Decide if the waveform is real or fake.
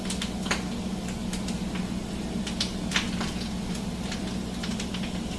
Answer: real